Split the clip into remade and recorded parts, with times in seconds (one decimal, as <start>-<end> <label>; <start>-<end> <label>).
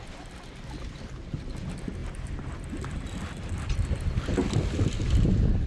0.0-5.7 recorded